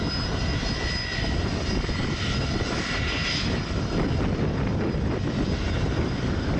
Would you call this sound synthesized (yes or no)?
no